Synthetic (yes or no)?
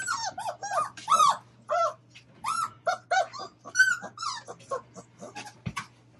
no